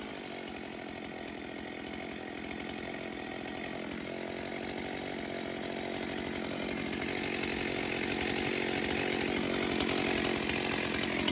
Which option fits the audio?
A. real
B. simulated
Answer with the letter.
A